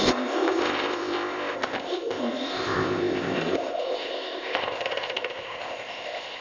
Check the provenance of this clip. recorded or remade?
remade